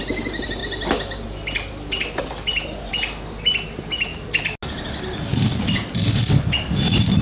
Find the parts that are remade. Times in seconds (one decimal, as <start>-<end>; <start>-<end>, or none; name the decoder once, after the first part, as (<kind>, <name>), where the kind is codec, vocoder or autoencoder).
none